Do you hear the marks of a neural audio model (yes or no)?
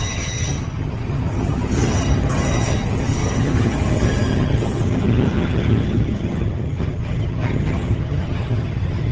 yes